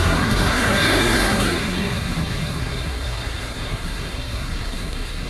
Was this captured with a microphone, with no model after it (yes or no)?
no